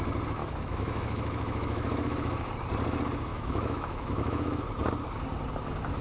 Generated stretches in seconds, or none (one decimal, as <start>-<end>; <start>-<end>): 0.4-2.5; 3.3-4.6